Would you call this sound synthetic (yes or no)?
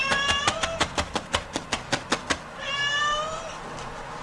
no